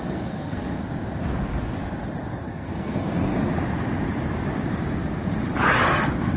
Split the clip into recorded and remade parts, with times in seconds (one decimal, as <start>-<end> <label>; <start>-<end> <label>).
0.0-0.8 remade; 0.8-2.4 recorded; 2.4-3.3 remade; 3.3-6.4 recorded